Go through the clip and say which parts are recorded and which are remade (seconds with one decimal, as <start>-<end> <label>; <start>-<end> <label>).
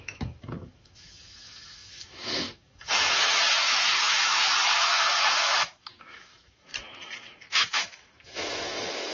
0.0-9.1 remade